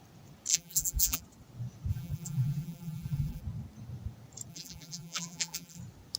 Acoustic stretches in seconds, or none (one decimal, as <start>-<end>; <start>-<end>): 0.0-0.5; 1.2-1.9; 3.4-4.5; 5.8-6.2